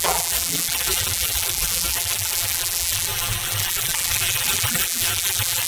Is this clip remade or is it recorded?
remade